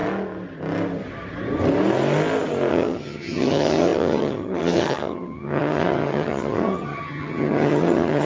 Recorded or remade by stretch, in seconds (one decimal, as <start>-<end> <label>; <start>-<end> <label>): 0.0-2.7 recorded; 2.7-8.3 remade